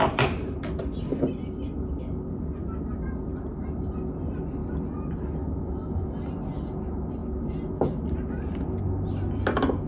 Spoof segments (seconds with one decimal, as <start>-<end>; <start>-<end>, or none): none